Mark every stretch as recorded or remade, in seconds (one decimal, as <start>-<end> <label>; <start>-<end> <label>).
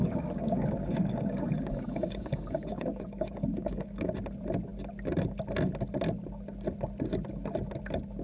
0.0-4.1 remade; 4.1-8.2 recorded